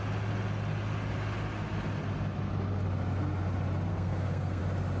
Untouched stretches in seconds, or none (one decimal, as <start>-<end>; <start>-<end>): 0.0-3.9; 4.6-5.0